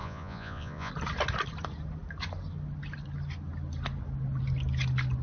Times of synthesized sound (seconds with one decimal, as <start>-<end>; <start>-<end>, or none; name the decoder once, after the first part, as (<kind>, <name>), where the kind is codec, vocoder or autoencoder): 0.0-0.9 (vocoder, Vocos)